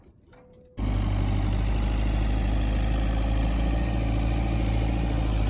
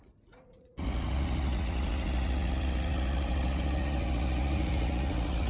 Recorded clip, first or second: first